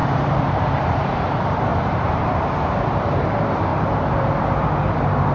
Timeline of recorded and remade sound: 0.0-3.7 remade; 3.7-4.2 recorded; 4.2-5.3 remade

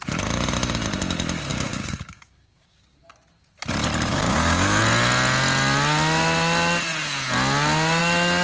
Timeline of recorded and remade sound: 0.0-1.5 recorded; 1.5-3.1 remade; 3.1-4.1 recorded; 4.1-4.8 remade; 4.8-8.4 recorded

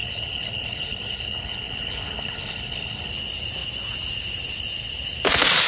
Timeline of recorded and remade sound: 0.0-3.1 remade; 3.1-5.7 recorded

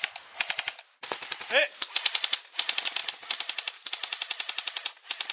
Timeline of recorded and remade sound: 0.0-5.3 recorded

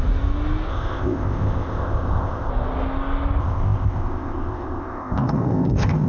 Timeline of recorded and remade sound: 0.0-0.7 recorded; 0.7-2.5 remade; 2.5-3.4 recorded; 3.4-6.1 remade